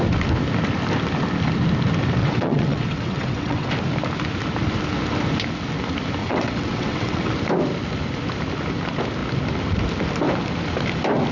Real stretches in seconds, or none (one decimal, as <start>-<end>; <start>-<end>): 0.0-2.2; 3.7-6.2; 7.3-11.3